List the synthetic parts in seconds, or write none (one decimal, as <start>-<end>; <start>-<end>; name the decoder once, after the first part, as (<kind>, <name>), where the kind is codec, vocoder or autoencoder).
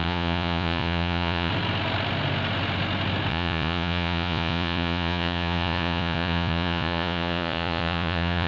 0.0-1.5 (vocoder, Vocos); 3.3-8.5